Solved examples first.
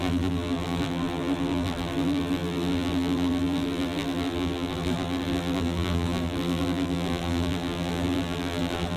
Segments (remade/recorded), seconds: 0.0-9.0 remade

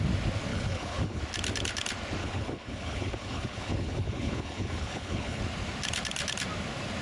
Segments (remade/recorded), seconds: 0.0-0.5 recorded; 0.5-1.2 remade; 1.2-2.2 recorded; 2.2-5.4 remade; 5.4-7.0 recorded

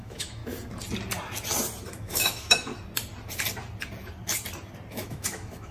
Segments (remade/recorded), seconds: 0.0-0.4 remade; 0.4-1.9 recorded; 1.9-2.7 remade; 2.7-4.9 recorded; 4.9-5.7 remade

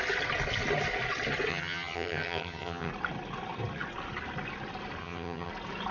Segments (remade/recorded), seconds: 0.0-1.5 recorded; 1.5-2.9 remade; 2.9-5.0 recorded; 5.0-5.5 remade; 5.5-5.9 recorded

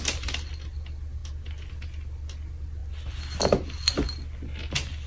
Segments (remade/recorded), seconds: 0.0-5.1 recorded

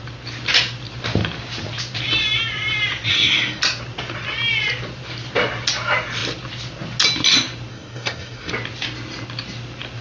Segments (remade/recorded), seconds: 0.0-3.1 recorded; 3.1-3.6 remade; 3.6-7.7 recorded; 7.7-8.5 remade; 8.5-10.0 recorded